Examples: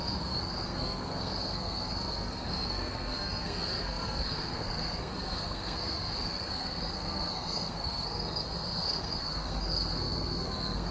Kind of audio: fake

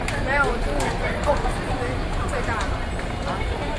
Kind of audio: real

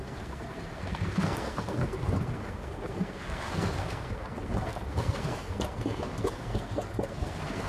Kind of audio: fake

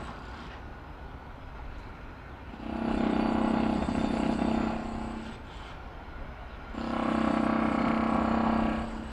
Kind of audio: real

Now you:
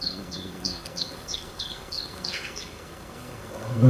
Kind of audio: fake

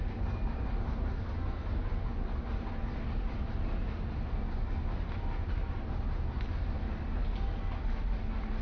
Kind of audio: real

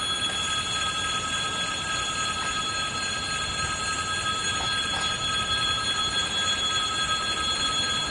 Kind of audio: real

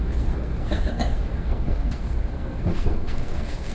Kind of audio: fake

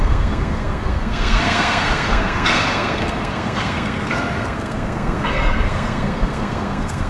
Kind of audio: fake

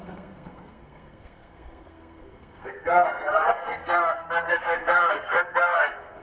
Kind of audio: fake